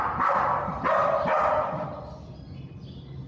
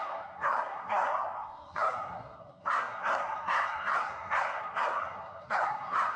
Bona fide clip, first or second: first